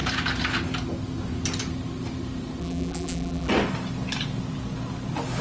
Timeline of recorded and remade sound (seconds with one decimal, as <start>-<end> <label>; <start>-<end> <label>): 0.0-2.6 recorded; 2.6-3.5 remade; 3.5-5.4 recorded